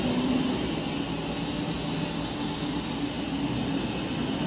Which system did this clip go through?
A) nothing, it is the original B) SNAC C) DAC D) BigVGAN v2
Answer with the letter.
A